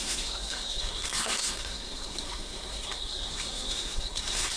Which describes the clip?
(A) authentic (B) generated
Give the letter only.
B